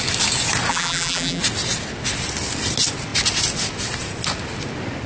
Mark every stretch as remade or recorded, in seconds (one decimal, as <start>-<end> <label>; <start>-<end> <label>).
0.0-0.7 recorded; 0.7-1.4 remade; 1.4-5.1 recorded